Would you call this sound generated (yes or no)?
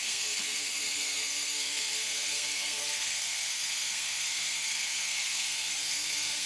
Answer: yes